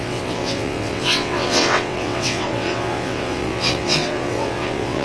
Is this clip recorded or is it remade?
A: remade